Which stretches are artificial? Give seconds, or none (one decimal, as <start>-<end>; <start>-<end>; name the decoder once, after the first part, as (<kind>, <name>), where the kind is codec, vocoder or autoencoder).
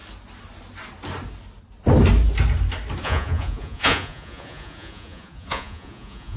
3.0-6.4 (vocoder, Vocos)